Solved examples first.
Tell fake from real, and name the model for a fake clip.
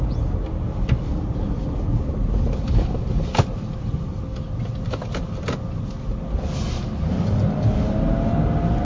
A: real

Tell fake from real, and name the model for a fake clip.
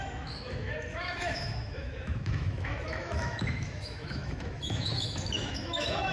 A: fake, autoencoder, DAC-VAE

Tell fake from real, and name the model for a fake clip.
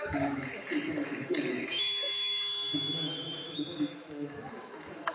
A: fake, autoencoder, DAC-VAE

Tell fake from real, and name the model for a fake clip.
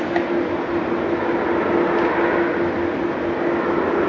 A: real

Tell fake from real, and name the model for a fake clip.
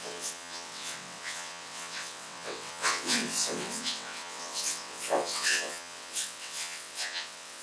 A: fake, vocoder, WaveNeXt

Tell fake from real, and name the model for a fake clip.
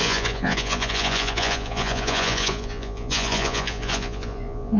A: fake, vocoder, Vocos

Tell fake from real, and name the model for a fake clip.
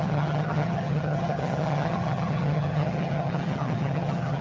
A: fake, vocoder, HiFi-GAN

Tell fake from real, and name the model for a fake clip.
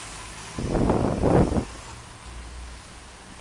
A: real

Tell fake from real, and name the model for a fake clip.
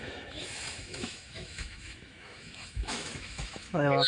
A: fake, autoencoder, DAC-VAE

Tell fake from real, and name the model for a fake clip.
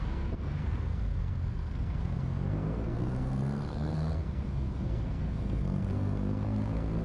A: fake, codec, SNAC